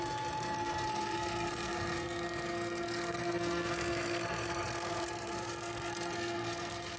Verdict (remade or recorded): remade